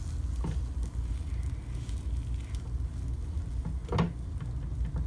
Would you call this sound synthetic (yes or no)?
no